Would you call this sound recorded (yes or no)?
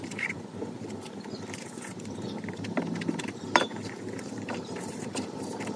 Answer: no